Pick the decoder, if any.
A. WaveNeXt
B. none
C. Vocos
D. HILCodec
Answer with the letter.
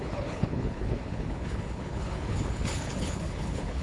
D